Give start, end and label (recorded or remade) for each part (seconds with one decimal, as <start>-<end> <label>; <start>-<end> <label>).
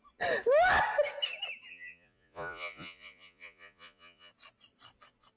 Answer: 0.0-1.7 recorded; 1.7-4.3 remade; 4.3-5.4 recorded